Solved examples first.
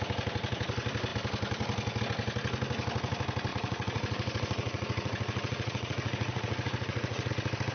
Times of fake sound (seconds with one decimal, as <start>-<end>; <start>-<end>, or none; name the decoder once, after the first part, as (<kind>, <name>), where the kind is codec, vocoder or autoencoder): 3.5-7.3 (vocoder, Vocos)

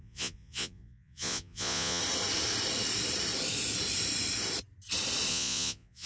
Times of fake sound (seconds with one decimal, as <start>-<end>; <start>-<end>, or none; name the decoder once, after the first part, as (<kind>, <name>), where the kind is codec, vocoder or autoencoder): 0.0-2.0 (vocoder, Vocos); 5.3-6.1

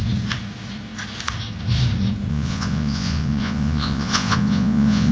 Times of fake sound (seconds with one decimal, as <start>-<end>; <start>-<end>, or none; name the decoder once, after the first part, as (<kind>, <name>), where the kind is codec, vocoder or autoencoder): 2.3-5.1 (vocoder, Vocos)

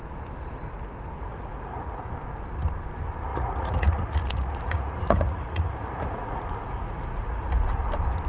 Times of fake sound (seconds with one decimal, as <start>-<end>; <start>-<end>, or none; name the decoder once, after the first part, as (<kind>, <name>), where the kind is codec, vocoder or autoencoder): 1.3-2.1 (vocoder, Vocos); 3.3-7.9

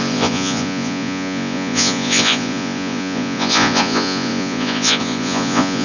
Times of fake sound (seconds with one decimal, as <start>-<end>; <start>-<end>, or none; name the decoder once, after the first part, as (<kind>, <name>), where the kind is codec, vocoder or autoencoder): 0.0-5.8 (vocoder, Vocos)

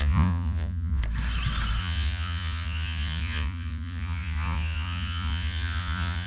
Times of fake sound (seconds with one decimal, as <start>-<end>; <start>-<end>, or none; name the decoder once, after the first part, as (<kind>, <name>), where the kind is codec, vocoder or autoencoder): 0.0-1.0 (vocoder, Vocos); 1.8-6.3